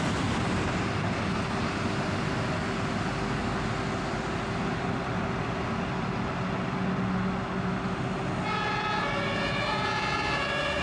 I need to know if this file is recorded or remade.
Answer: recorded